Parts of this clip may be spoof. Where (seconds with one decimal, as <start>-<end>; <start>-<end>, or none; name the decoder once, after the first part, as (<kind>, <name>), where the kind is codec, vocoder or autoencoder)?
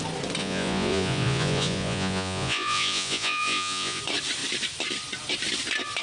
0.4-4.0 (vocoder, Vocos)